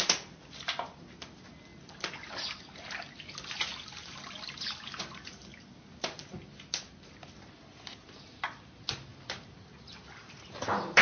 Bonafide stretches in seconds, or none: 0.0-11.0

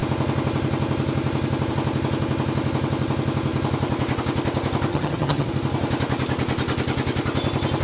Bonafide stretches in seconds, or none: 0.0-4.9; 5.5-7.8

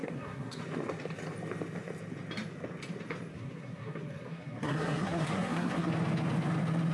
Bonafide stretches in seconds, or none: 0.6-3.3; 5.9-6.9